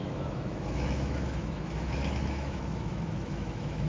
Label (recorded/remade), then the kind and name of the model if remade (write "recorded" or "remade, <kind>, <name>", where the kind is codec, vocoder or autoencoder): remade, autoencoder, DAC-VAE